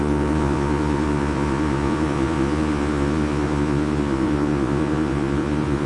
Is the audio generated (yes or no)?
yes